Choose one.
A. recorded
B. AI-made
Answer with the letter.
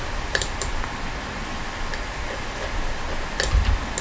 A